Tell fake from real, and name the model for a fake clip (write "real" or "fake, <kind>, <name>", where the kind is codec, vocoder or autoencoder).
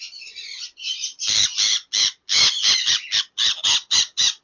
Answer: fake, vocoder, BigVGAN v2